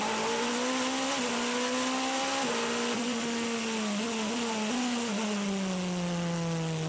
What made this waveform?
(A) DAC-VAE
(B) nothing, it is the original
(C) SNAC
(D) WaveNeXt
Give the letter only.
B